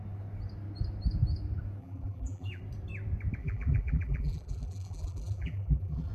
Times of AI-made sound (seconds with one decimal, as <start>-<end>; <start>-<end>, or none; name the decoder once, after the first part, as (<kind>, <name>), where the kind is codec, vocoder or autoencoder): 1.8-2.6 (vocoder, BigVGAN v2); 3.4-6.1